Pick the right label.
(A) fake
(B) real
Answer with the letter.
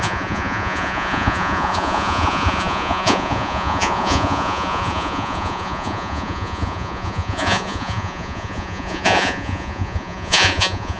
A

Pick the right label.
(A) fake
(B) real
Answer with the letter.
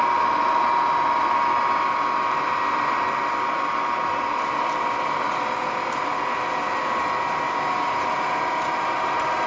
B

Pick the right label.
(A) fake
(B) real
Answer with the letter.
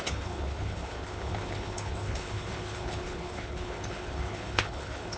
A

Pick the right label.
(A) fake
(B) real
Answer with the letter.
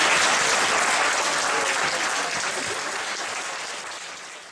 B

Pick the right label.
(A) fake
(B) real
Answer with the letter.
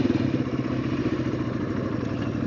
B